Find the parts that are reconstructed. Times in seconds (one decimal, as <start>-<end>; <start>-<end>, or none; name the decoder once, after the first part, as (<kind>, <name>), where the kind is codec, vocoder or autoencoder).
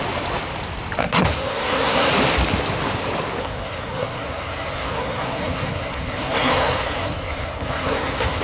1.0-2.1 (codec, SNAC); 3.4-8.4